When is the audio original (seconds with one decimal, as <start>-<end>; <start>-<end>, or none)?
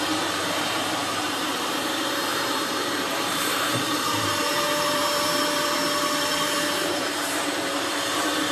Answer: none